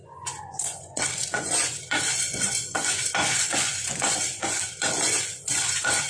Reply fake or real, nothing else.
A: fake